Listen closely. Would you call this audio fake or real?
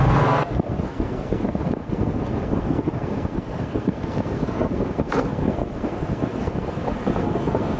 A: fake